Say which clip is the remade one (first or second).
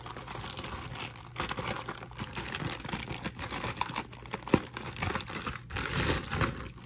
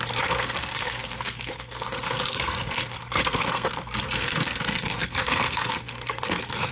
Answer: second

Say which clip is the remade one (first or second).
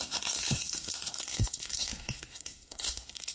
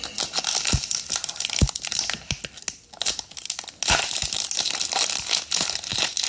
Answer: first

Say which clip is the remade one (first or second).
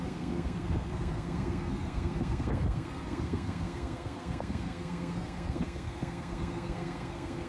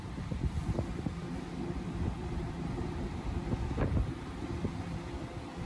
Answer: first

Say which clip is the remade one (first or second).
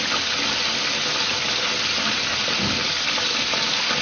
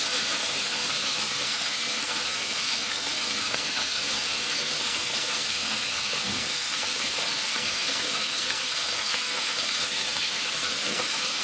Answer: second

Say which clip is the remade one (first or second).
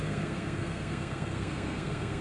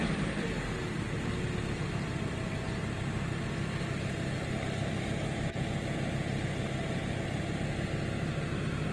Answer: first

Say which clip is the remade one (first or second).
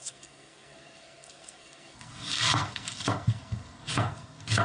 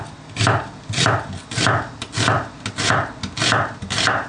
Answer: first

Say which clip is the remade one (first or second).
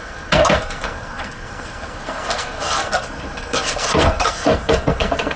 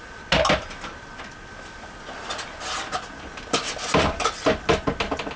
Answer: first